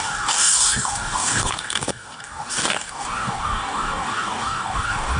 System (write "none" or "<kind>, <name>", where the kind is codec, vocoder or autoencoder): codec, DAC